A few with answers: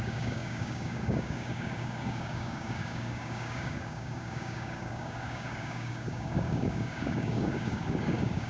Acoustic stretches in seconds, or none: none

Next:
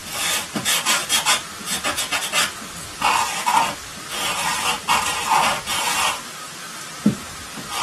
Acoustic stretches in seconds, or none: 0.0-7.8

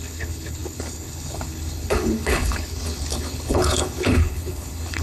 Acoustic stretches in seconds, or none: none